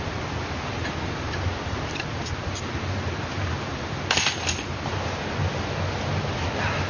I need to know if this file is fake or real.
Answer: real